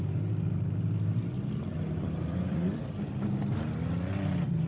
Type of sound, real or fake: real